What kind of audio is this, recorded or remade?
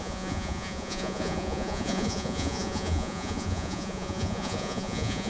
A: remade